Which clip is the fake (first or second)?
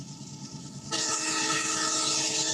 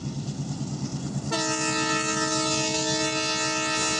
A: first